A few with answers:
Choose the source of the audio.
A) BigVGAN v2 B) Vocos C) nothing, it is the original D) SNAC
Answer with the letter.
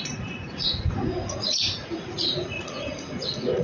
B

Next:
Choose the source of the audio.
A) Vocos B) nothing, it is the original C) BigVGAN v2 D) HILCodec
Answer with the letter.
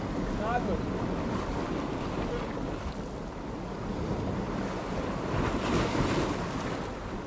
B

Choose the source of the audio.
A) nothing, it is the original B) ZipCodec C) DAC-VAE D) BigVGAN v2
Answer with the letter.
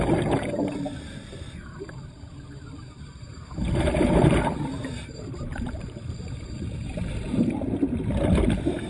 D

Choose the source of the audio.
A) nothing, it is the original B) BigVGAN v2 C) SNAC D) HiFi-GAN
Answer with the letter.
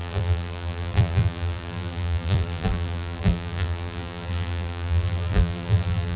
B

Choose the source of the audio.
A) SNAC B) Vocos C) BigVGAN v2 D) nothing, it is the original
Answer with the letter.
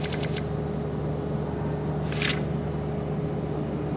D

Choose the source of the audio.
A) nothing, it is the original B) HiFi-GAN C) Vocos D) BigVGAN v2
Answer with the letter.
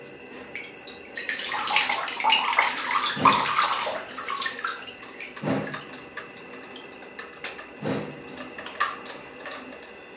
A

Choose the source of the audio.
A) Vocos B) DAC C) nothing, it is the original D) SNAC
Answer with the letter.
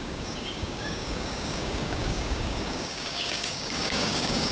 B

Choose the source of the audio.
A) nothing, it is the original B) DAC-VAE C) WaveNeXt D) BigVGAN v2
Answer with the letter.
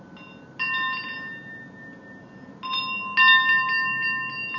A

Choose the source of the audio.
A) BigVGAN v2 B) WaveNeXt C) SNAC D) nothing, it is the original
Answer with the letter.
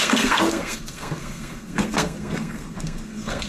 C